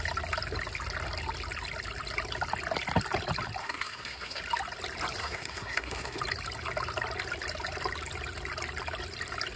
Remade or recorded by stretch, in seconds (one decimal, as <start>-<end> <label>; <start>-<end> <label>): 0.0-3.6 recorded; 3.6-4.4 remade; 4.4-5.2 recorded; 5.2-6.2 remade; 6.2-9.6 recorded